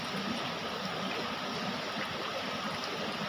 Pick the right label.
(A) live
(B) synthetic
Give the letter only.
A